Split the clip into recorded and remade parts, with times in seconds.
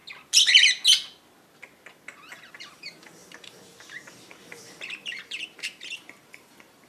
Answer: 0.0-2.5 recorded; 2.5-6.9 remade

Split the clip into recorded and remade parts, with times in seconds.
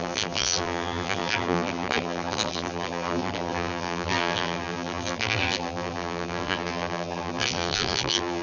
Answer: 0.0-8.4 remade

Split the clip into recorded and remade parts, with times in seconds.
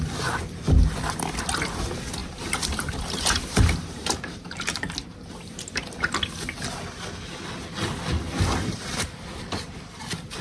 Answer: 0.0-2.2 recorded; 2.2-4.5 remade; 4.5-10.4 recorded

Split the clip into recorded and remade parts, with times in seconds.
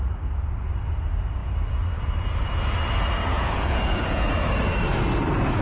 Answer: 0.0-3.3 recorded; 3.3-4.3 remade; 4.3-5.6 recorded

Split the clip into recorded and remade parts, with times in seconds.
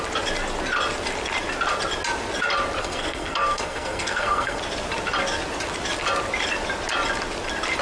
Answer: 0.0-2.8 recorded; 2.8-4.6 remade; 4.6-7.8 recorded